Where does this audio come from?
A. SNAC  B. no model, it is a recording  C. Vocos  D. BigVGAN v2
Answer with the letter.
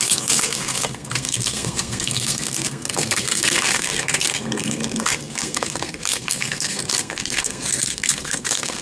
A